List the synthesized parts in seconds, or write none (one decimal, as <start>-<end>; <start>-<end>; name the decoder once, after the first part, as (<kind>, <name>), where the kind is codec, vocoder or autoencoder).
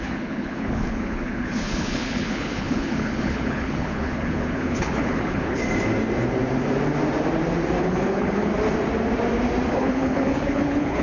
0.0-5.6 (codec, HILCodec); 7.8-8.5; 9.7-11.0